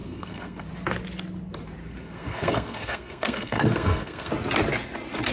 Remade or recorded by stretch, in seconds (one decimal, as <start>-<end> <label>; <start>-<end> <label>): 0.0-0.7 remade; 0.7-1.8 recorded; 1.8-4.3 remade; 4.3-5.3 recorded